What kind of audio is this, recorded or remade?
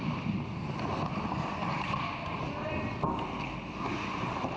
recorded